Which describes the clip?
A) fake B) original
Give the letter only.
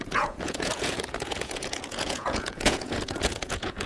A